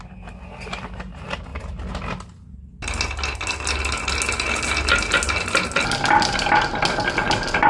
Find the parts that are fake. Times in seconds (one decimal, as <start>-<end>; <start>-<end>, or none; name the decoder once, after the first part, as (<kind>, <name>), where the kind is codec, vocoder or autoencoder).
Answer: none